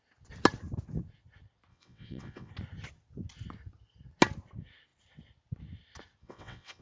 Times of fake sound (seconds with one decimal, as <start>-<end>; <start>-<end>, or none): 1.7-2.5; 6.2-6.8